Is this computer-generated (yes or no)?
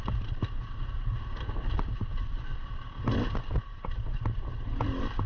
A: no